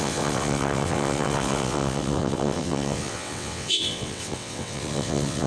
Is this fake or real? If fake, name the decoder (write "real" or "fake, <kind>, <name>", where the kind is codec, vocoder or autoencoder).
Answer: fake, vocoder, WaveNeXt